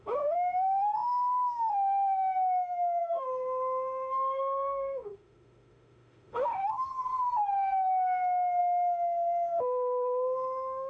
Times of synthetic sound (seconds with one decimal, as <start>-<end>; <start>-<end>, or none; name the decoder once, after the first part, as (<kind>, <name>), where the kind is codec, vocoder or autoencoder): 0.0-6.9 (autoencoder, DAC-VAE); 8.6-10.9